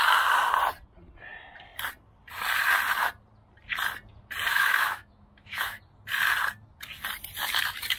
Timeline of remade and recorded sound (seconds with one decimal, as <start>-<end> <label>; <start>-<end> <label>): 0.0-4.5 recorded; 4.5-5.8 remade; 5.8-8.0 recorded